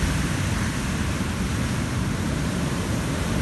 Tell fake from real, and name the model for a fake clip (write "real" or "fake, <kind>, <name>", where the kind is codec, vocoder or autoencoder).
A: real